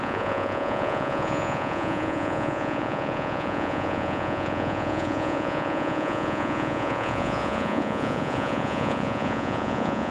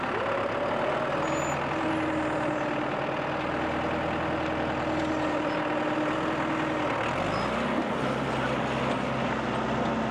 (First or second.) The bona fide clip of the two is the second